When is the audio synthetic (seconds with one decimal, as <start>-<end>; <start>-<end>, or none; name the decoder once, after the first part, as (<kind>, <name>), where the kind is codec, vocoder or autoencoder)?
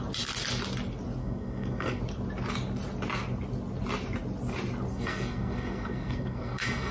1.2-2.0 (codec, SNAC); 4.9-6.9